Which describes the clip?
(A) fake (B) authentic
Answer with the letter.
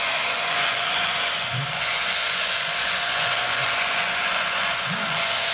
A